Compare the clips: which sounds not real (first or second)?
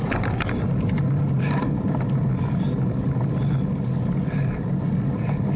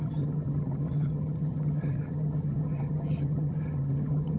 second